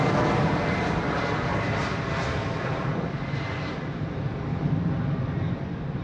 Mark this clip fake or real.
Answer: real